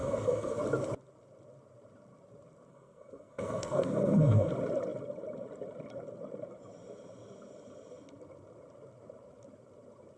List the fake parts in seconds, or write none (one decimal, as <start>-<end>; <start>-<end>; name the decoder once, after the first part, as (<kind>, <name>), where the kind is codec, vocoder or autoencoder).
0.0-0.6 (codec, SNAC); 2.7-4.5

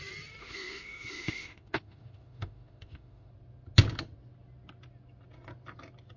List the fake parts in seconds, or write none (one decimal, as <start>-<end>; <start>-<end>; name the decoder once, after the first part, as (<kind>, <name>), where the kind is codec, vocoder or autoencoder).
0.4-3.3 (autoencoder, DAC-VAE)

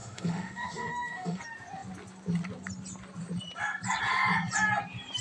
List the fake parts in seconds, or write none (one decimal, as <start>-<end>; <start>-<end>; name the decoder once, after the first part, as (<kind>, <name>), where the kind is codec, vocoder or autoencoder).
0.0-1.4 (autoencoder, DAC-VAE)

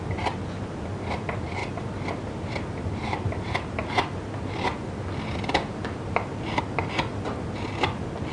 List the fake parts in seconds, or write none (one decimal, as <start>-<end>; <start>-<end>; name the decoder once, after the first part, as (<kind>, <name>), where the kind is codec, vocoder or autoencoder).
none

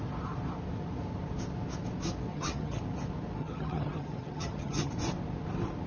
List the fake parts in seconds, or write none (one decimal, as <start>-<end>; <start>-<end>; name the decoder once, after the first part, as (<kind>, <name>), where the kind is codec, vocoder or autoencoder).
2.3-2.8 (vocoder, HiFi-GAN); 3.4-4.9

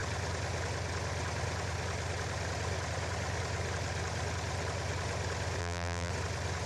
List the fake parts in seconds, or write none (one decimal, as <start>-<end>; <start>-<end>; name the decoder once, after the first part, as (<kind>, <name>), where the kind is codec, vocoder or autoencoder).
5.6-6.1 (vocoder, BigVGAN v2)